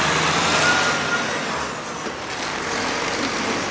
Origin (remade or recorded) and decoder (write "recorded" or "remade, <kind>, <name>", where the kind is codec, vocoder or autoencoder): recorded